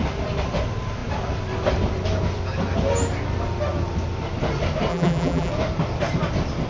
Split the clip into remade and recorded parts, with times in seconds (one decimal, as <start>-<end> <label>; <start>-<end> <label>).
0.0-4.9 recorded; 4.9-5.5 remade; 5.5-6.7 recorded